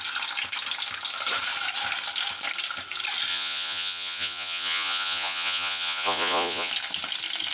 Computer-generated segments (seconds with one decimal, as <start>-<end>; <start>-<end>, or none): 3.3-6.7